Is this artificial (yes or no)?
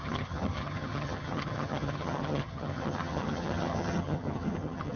yes